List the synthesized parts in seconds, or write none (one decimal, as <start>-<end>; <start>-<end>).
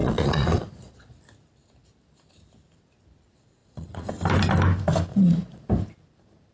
0.0-1.2; 3.6-4.1; 5.1-5.7